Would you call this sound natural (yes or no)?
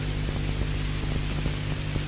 yes